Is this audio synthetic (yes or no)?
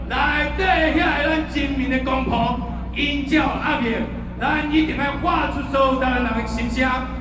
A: no